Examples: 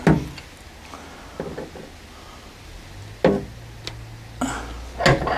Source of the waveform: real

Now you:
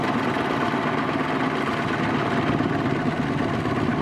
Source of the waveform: real